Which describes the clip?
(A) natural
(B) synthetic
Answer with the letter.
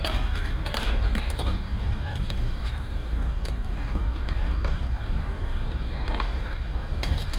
B